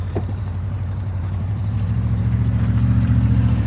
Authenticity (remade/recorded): remade